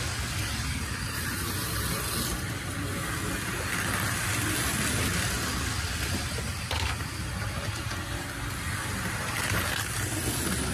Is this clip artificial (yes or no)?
no